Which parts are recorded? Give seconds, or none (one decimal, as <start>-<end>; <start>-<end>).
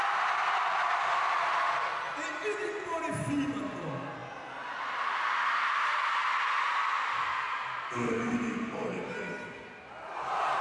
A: 0.0-10.6